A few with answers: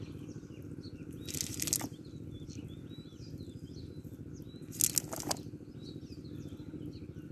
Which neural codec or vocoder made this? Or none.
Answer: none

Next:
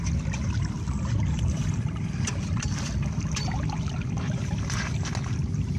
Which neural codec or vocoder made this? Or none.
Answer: none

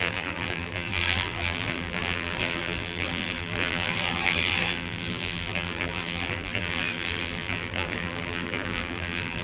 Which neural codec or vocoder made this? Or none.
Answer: vocoder, BigVGAN v2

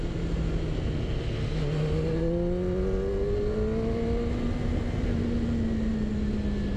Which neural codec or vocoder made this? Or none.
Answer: none